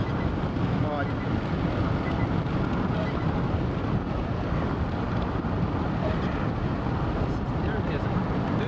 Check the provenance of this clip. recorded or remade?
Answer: recorded